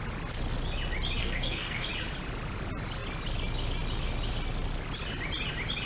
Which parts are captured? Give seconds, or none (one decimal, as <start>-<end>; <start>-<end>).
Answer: 0.0-1.2; 1.9-5.9